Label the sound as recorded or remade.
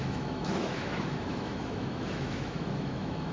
remade